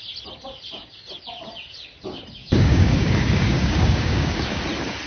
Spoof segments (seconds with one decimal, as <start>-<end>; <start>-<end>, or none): 2.4-4.6